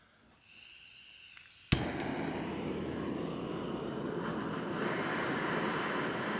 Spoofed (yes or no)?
no